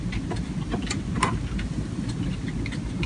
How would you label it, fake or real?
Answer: real